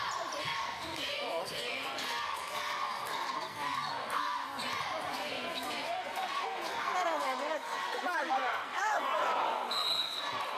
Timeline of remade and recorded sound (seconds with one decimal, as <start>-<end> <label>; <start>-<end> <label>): 0.0-0.4 recorded; 0.4-4.6 remade; 4.6-5.1 recorded; 5.1-10.2 remade; 10.2-10.6 recorded